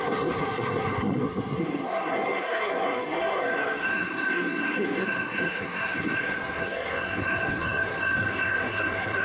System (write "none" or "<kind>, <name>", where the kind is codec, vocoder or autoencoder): codec, SNAC